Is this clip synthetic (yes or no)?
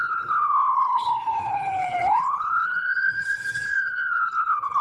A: yes